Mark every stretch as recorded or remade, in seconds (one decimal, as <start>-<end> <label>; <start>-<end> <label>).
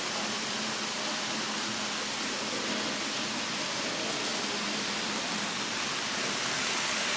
0.0-7.2 recorded